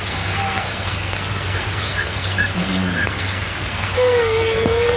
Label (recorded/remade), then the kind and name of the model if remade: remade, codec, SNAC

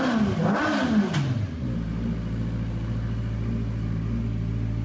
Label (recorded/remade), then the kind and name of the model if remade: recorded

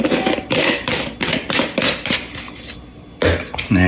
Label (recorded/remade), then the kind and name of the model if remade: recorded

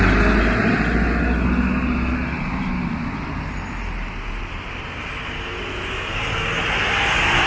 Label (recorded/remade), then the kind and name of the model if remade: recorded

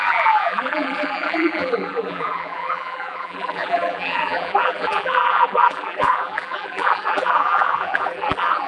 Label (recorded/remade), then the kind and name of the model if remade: remade, vocoder, BigVGAN v2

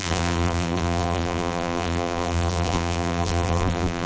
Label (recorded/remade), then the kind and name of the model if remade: remade, vocoder, BigVGAN v2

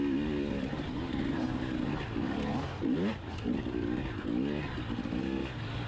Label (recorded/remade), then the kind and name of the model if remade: recorded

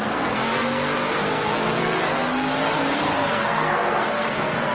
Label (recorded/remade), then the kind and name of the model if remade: remade, codec, SNAC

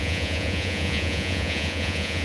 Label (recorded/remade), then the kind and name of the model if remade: remade, vocoder, Vocos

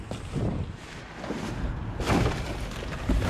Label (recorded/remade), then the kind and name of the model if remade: recorded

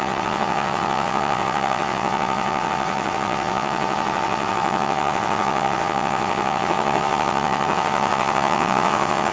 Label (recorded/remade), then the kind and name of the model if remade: remade, vocoder, WaveNeXt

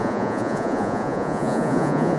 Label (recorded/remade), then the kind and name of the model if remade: remade, vocoder, Vocos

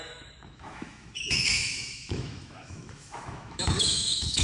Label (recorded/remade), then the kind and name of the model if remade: remade, autoencoder, DAC-VAE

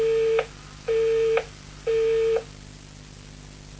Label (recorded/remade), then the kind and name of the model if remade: recorded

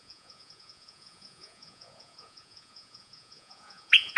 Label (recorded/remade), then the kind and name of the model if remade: remade, vocoder, Vocos